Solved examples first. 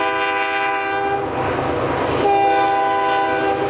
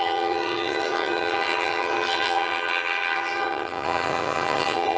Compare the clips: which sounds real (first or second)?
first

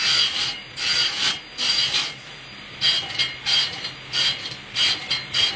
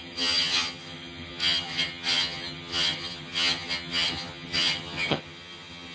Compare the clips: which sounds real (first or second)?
first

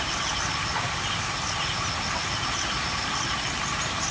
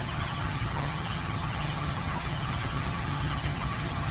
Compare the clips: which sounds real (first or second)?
first